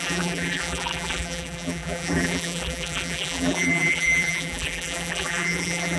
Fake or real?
fake